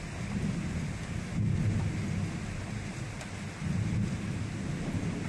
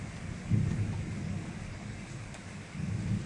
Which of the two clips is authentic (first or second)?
first